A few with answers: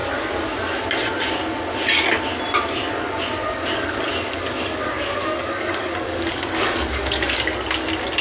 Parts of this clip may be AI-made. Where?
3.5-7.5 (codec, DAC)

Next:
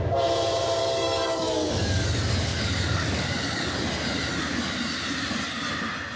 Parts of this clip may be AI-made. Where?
0.8-1.7 (codec, DAC); 2.5-3.8

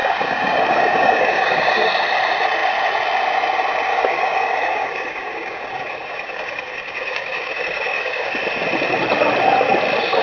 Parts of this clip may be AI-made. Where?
0.0-1.9 (codec, DAC); 3.9-8.4

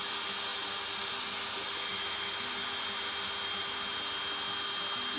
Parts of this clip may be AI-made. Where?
none